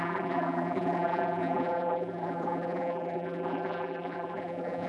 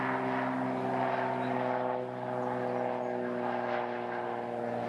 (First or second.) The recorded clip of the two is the second